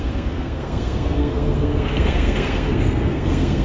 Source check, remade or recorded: remade